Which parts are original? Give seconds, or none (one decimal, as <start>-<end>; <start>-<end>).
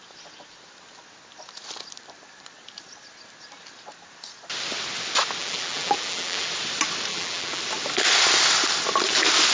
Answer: 0.0-5.4; 6.5-7.1; 7.6-9.5